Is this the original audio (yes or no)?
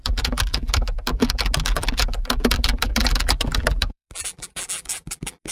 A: no